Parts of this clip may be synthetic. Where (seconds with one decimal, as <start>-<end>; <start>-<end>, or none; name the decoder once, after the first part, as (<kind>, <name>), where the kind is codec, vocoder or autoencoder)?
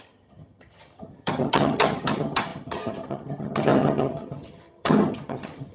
0.0-5.7 (vocoder, HiFi-GAN)